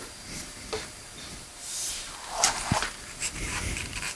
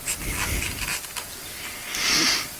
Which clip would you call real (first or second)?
second